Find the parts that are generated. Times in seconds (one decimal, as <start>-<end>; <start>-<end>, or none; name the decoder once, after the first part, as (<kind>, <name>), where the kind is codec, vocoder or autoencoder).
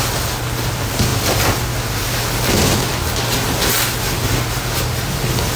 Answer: none